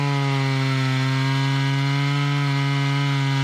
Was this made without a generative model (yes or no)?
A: yes